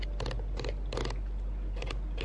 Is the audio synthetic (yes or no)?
no